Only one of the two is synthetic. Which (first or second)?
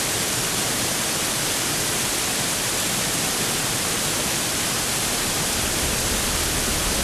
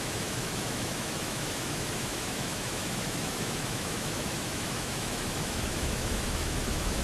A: second